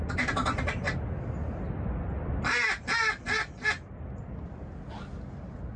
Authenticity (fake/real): real